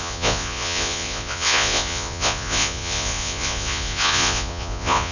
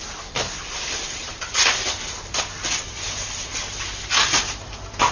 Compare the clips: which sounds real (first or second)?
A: second